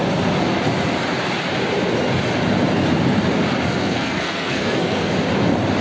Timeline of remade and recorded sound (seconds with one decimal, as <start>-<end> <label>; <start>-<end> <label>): 0.0-3.8 recorded; 3.8-5.1 remade; 5.1-5.8 recorded